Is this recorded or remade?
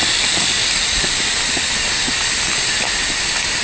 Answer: recorded